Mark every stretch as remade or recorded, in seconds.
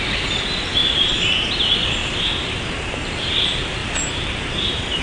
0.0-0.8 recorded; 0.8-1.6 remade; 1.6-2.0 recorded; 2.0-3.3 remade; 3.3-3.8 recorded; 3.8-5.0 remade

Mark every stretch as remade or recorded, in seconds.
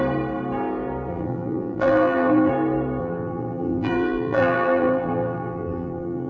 0.0-1.1 recorded; 1.1-2.5 remade; 2.5-3.0 recorded; 3.0-6.3 remade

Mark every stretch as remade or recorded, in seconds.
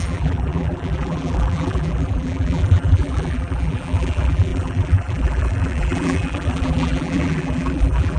0.0-8.2 remade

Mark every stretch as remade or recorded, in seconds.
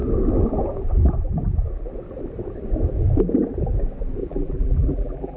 0.0-4.2 recorded; 4.2-5.4 remade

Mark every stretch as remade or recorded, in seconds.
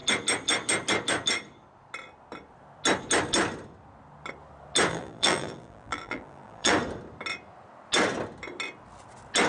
0.0-4.9 recorded; 4.9-6.7 remade; 6.7-9.5 recorded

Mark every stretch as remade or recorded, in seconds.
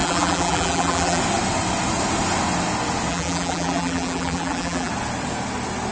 0.0-1.2 remade; 1.2-3.1 recorded; 3.1-4.9 remade; 4.9-5.9 recorded